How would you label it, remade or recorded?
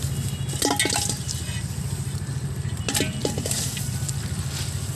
recorded